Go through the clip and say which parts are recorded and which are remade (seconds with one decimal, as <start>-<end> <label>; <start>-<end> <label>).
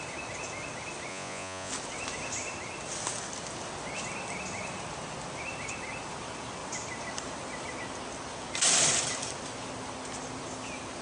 0.0-1.1 recorded; 1.1-1.7 remade; 1.7-11.0 recorded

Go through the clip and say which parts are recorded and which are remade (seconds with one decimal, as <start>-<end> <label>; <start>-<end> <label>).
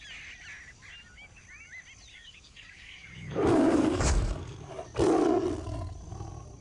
0.0-2.1 recorded; 2.1-4.7 remade; 4.7-6.6 recorded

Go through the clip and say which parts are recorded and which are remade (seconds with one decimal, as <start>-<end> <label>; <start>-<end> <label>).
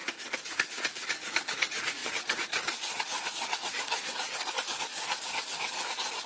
0.0-6.3 remade